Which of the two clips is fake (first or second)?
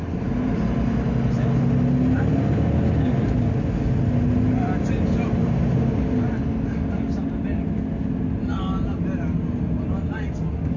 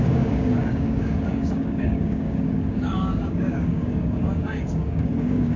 second